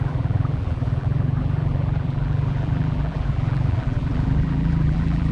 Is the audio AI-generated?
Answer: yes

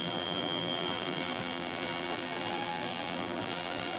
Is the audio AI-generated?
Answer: yes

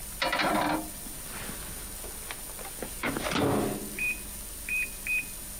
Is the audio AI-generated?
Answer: no